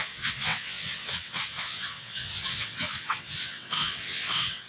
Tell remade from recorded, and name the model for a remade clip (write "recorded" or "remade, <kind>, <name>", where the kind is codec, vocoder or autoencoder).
remade, vocoder, WaveNeXt